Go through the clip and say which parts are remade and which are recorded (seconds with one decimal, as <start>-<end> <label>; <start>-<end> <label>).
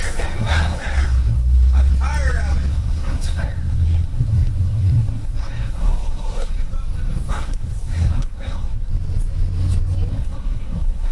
0.0-1.9 remade; 1.9-2.7 recorded; 2.7-6.7 remade; 6.7-7.3 recorded; 7.3-8.9 remade; 8.9-10.1 recorded; 10.1-11.1 remade